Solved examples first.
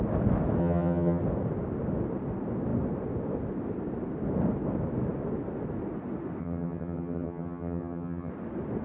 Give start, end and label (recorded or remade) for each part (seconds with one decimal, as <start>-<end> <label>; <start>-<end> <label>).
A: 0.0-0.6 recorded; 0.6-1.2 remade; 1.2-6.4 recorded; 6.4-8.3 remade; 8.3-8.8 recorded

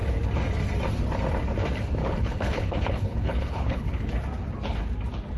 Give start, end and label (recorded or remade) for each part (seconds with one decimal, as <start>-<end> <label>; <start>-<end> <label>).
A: 0.0-2.0 recorded; 2.0-4.1 remade; 4.1-5.4 recorded

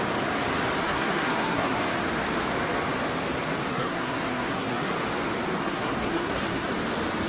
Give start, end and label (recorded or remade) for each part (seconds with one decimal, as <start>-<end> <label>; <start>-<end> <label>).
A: 0.0-0.8 recorded; 0.8-1.8 remade; 1.8-3.7 recorded; 3.7-4.9 remade; 4.9-5.6 recorded; 5.6-6.7 remade; 6.7-7.3 recorded